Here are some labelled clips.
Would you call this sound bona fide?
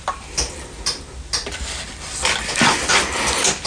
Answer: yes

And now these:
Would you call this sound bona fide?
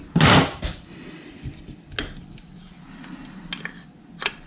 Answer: yes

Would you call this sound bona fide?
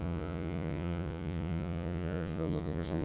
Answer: no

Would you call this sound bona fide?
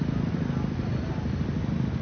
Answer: yes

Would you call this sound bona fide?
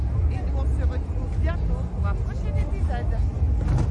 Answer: yes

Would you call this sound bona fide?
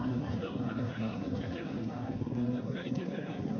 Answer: no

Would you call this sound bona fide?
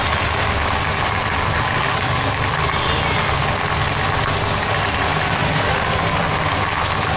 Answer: yes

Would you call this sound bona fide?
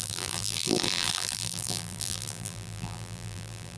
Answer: no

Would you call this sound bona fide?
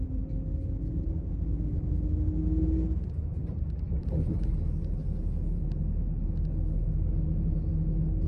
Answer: yes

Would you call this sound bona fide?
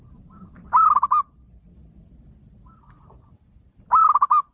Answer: yes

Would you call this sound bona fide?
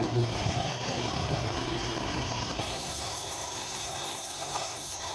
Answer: no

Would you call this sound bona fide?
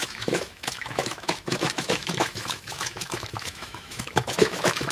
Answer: no